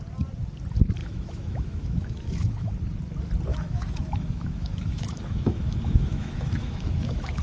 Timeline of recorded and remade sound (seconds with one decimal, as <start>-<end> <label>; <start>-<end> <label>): 0.0-1.0 recorded; 1.0-2.7 remade; 2.7-3.5 recorded; 3.5-7.4 remade